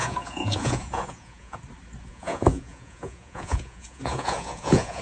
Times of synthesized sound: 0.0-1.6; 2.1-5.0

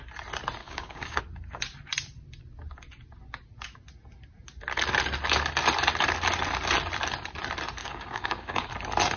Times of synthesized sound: 0.6-1.2; 7.8-8.7

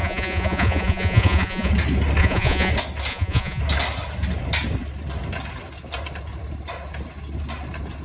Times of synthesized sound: 0.0-1.7; 2.2-2.7; 3.1-3.6

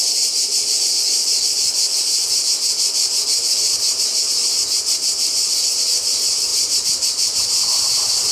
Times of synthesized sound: 3.3-4.2; 6.5-8.3

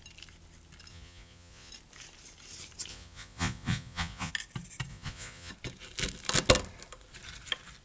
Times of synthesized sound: 0.9-1.7; 2.9-4.3; 4.9-5.5

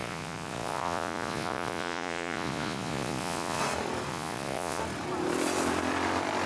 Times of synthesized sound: 0.0-3.6; 4.1-4.8

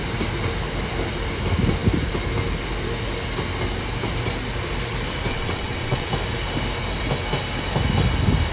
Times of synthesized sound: 5.3-6.1

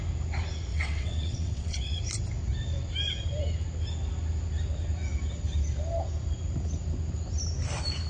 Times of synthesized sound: 0.7-2.0